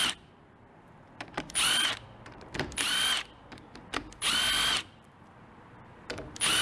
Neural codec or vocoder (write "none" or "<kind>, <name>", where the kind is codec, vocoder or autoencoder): vocoder, BigVGAN v2